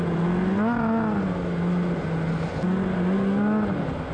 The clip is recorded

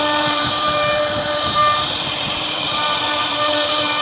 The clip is remade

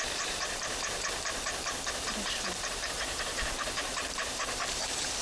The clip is remade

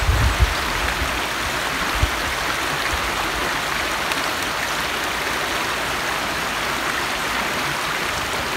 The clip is recorded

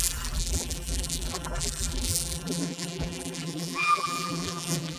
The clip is remade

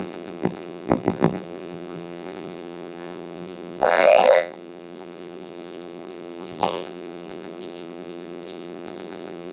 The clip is remade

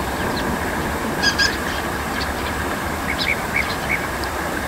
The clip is remade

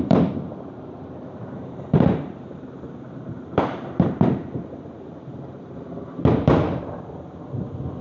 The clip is remade